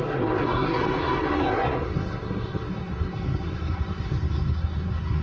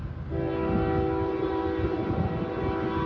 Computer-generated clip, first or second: first